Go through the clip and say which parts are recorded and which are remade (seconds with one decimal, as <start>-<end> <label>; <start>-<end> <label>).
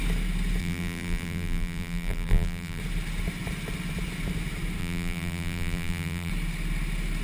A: 0.0-0.6 recorded; 0.6-2.8 remade; 2.8-4.8 recorded; 4.8-6.3 remade; 6.3-7.2 recorded